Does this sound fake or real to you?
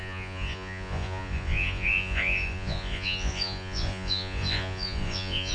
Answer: fake